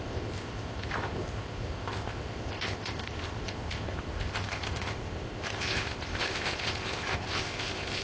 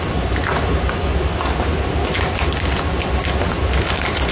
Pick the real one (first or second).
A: second